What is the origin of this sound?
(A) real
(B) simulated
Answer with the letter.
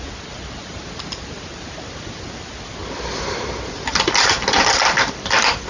A